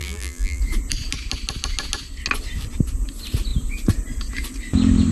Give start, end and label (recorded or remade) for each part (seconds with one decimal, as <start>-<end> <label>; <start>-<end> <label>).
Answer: 0.0-0.6 remade; 0.6-5.1 recorded